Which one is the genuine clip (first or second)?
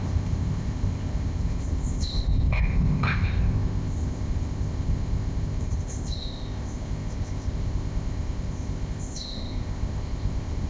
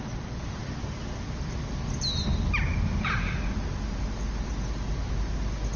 second